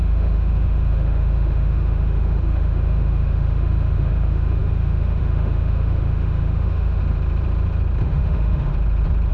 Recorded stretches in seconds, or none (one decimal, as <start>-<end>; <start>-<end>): 7.0-8.0; 8.7-9.3